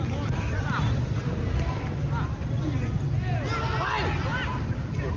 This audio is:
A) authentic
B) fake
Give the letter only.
A